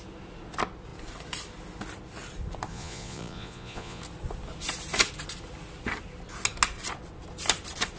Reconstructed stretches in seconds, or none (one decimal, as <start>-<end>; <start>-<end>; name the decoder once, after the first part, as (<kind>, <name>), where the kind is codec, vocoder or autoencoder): 2.7-4.0 (vocoder, Vocos)